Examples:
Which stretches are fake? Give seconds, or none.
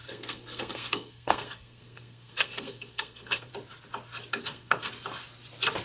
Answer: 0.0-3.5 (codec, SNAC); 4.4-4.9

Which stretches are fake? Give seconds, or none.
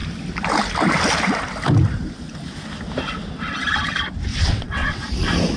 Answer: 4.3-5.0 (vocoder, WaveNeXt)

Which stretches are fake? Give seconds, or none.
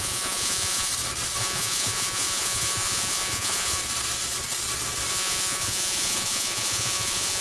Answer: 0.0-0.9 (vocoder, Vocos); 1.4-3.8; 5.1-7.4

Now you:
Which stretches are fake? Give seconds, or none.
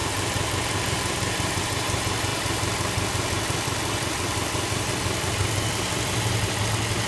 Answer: 0.0-1.6 (vocoder, BigVGAN v2); 2.3-6.6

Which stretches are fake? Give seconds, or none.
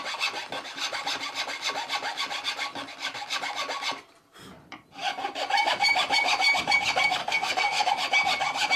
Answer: 7.2-7.9 (codec, SNAC)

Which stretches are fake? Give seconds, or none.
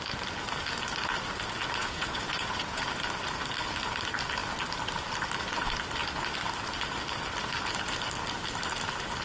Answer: 1.8-2.8 (vocoder, Vocos)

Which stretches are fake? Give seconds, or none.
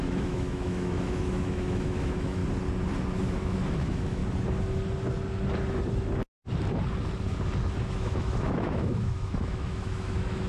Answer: 0.0-2.4 (autoencoder, DAC-VAE); 3.2-4.2; 7.9-10.5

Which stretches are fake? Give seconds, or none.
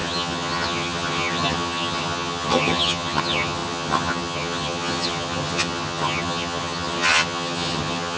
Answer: 0.0-8.2 (vocoder, HiFi-GAN)